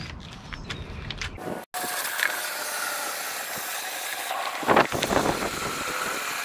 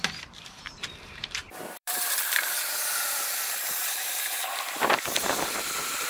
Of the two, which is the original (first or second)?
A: first